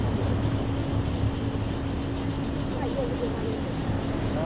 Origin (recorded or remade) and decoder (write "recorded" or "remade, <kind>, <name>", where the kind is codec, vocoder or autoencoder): recorded